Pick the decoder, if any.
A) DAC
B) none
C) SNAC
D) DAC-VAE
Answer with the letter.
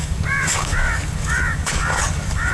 A